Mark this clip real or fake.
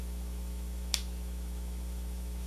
fake